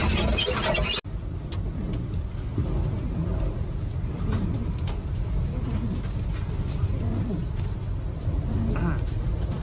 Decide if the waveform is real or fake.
real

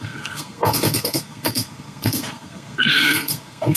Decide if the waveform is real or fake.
fake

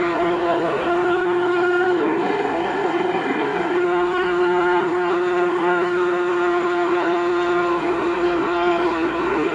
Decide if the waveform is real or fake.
fake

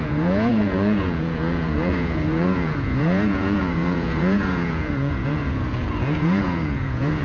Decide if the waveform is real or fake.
fake